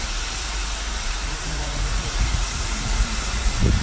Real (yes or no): no